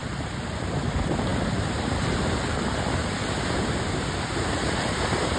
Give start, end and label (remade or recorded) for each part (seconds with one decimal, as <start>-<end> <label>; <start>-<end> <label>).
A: 0.0-5.4 recorded

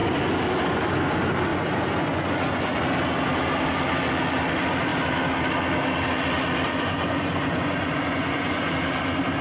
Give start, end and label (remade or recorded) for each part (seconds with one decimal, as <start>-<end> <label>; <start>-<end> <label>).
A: 0.0-1.5 recorded; 1.5-2.8 remade; 2.8-6.7 recorded; 6.7-8.7 remade; 8.7-9.4 recorded

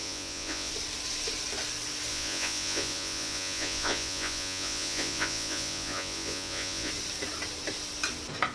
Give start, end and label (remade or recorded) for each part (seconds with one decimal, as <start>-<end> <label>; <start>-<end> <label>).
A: 0.0-0.7 remade; 0.7-2.1 recorded; 2.1-6.9 remade; 6.9-8.5 recorded

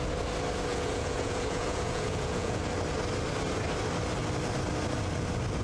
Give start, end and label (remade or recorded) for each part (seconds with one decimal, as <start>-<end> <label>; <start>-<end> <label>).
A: 0.0-0.7 recorded; 0.7-2.6 remade; 2.6-5.6 recorded

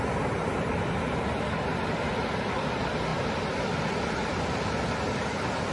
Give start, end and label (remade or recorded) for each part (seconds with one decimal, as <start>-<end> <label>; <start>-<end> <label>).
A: 0.0-5.7 recorded

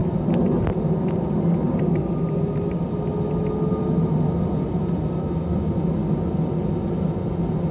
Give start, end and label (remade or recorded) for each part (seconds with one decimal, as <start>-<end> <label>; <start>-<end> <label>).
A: 0.0-7.7 recorded

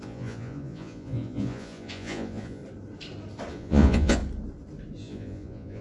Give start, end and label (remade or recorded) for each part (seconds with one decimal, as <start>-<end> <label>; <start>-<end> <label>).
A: 0.0-2.6 remade; 2.6-3.5 recorded; 3.5-4.2 remade; 4.2-5.0 recorded; 5.0-5.8 remade